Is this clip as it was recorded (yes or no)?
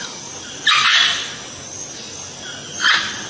yes